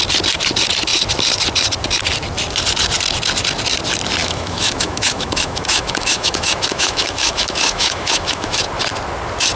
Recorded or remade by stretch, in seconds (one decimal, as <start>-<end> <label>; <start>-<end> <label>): 0.0-4.2 recorded; 4.2-8.6 remade; 8.6-9.6 recorded